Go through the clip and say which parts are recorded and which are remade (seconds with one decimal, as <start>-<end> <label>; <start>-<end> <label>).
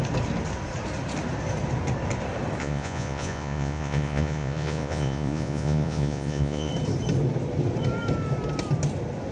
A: 0.0-2.6 recorded; 2.6-6.7 remade; 6.7-9.3 recorded